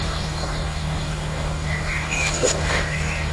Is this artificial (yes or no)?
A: yes